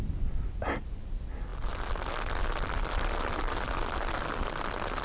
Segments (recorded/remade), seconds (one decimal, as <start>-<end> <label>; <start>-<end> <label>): 0.0-5.0 recorded